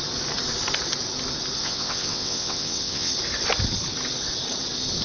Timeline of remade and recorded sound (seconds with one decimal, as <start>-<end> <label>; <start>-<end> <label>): 0.0-1.6 recorded; 1.6-3.1 remade; 3.1-5.0 recorded